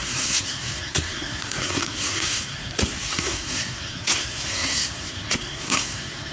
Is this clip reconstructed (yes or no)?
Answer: yes